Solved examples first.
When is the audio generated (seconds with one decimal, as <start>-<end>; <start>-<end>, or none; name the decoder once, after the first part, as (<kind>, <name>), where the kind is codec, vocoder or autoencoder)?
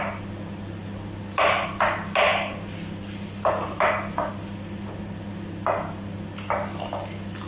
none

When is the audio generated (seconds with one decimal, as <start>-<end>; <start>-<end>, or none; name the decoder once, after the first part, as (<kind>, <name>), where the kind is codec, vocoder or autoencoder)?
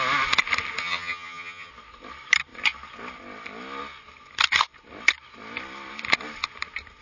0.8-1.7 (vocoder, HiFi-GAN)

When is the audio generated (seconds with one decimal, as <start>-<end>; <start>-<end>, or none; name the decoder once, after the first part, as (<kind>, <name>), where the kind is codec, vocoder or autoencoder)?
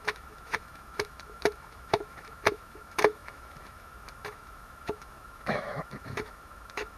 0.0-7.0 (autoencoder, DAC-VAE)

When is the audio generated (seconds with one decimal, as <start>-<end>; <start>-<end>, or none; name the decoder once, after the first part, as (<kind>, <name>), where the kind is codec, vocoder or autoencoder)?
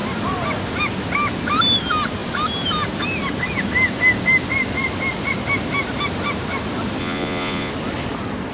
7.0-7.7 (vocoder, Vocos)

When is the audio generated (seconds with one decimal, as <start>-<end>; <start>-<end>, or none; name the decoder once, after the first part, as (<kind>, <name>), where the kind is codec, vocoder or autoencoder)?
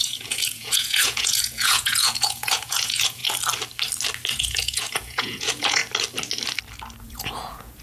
0.0-3.2 (vocoder, Vocos); 4.3-5.8; 7.0-7.8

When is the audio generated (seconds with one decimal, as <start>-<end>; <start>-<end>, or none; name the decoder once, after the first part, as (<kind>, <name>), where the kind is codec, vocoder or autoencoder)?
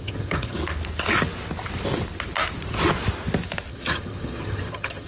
0.0-0.6 (vocoder, HiFi-GAN); 3.7-5.1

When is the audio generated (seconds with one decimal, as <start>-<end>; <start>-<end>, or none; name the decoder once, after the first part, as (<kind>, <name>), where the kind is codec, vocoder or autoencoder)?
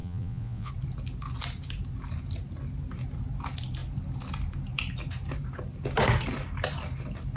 0.0-0.7 (vocoder, Vocos)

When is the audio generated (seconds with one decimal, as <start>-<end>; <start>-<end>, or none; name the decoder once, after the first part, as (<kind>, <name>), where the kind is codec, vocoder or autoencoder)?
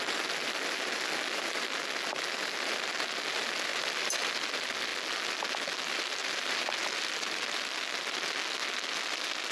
3.7-4.4 (vocoder, BigVGAN v2); 6.2-7.4